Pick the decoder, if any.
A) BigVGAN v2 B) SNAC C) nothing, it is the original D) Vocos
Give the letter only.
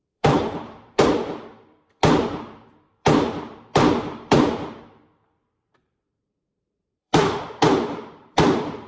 A